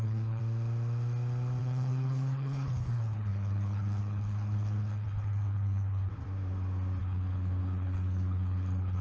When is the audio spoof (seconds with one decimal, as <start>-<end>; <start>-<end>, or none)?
0.0-0.4; 1.6-6.1; 7.0-9.0